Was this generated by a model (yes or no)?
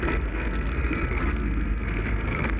yes